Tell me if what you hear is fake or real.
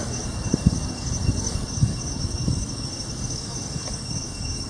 fake